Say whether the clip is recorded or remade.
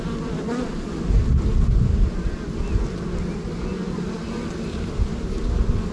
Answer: recorded